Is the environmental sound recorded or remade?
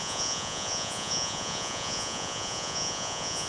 remade